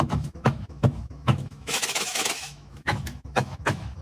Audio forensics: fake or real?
fake